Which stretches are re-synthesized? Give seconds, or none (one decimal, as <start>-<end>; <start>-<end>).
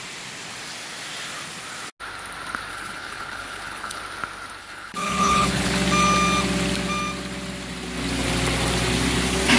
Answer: 2.7-4.0; 4.6-5.7